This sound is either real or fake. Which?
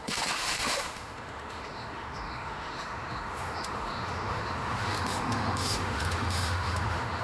fake